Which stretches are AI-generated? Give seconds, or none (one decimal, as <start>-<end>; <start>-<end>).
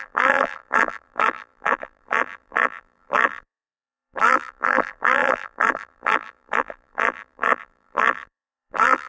0.0-9.1